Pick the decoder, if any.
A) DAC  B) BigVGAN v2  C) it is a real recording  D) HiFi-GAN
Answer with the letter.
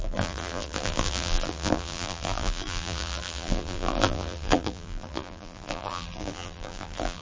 B